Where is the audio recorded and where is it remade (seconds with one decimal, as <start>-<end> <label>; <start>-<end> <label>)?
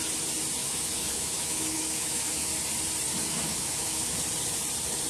0.0-0.6 recorded; 0.6-2.5 remade; 2.5-3.2 recorded; 3.2-4.1 remade; 4.1-5.1 recorded